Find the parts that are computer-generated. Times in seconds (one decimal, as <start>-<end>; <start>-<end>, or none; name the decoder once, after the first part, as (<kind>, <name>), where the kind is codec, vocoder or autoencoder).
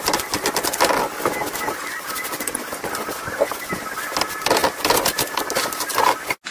none